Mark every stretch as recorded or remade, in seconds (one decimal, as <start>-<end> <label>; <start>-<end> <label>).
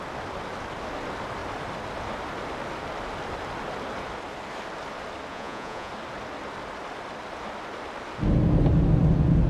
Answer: 0.0-5.3 recorded; 5.3-5.9 remade; 5.9-9.5 recorded